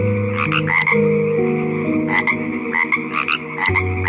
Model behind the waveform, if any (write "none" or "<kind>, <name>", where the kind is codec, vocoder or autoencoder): none